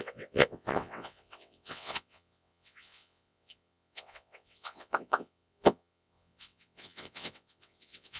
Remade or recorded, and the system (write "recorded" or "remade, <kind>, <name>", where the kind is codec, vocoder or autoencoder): remade, vocoder, WaveNeXt